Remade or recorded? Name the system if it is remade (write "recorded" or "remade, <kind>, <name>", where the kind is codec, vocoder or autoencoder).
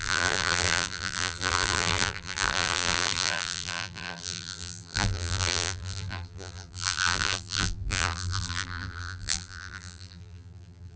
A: remade, vocoder, BigVGAN v2